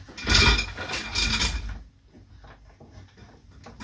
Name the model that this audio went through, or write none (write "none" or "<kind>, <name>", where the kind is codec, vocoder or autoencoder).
none